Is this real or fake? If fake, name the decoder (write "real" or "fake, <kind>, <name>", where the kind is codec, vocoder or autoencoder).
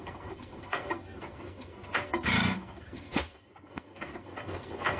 fake, codec, SNAC